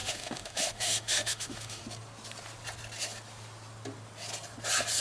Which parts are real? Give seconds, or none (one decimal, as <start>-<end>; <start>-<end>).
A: 1.8-5.0